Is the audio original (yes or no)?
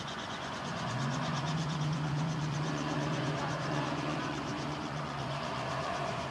no